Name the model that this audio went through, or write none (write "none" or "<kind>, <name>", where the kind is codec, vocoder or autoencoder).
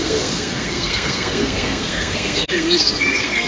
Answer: codec, SNAC